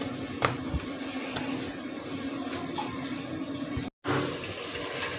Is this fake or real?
real